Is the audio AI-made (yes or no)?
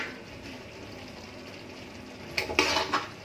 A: no